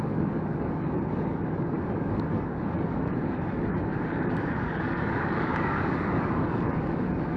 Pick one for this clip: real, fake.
fake